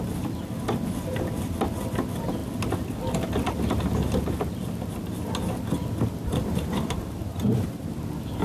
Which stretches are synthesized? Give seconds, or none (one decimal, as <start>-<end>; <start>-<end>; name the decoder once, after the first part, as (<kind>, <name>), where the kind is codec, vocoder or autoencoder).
6.2-8.0 (vocoder, BigVGAN v2)